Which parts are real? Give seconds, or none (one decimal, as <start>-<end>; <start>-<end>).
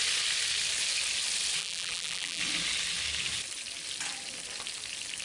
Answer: 0.0-1.6; 2.4-5.2